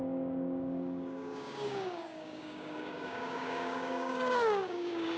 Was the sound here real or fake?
fake